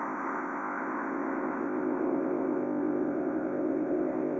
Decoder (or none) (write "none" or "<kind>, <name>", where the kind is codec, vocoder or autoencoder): codec, ZipCodec